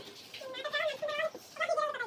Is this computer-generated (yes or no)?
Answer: no